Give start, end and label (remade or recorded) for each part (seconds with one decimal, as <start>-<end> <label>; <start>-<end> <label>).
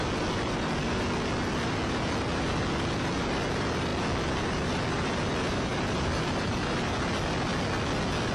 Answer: 0.0-3.9 remade; 3.9-4.4 recorded; 4.4-7.5 remade; 7.5-8.3 recorded